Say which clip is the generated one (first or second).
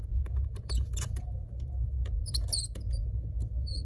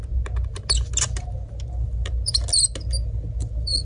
first